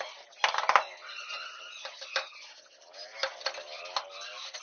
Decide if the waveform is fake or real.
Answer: real